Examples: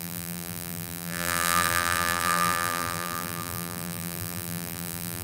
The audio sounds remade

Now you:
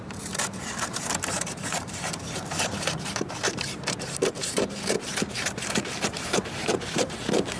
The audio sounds remade